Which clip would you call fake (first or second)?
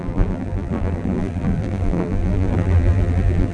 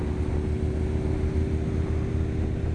first